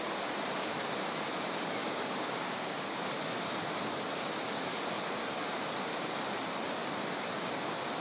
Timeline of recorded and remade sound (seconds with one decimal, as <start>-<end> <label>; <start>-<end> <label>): 0.0-1.8 recorded; 1.8-3.0 remade; 3.0-5.2 recorded; 5.2-5.7 remade; 5.7-8.0 recorded